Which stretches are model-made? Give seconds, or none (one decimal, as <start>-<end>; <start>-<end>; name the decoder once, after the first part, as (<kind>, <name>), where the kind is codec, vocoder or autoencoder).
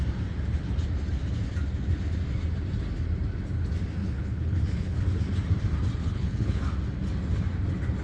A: 4.0-5.0 (codec, HILCodec); 6.0-6.6